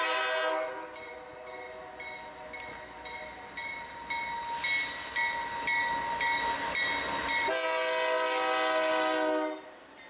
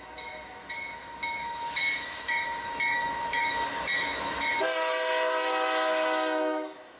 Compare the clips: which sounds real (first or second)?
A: first